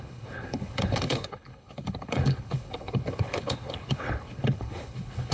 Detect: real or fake fake